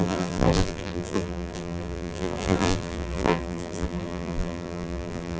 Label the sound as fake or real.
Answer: fake